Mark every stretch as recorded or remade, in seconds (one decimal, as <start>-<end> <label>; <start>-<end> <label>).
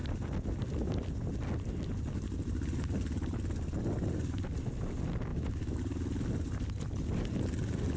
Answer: 0.0-5.3 recorded; 5.3-5.8 remade; 5.8-8.0 recorded